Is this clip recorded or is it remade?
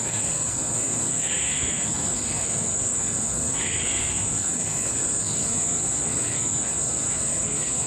remade